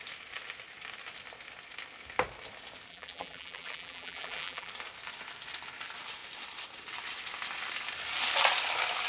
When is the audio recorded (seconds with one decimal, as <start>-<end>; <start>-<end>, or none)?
0.0-2.9; 4.7-9.1